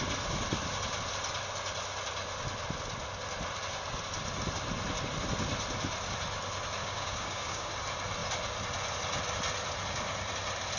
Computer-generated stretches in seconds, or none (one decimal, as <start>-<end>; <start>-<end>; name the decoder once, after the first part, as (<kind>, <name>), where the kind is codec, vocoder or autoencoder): 6.8-7.7 (codec, DAC)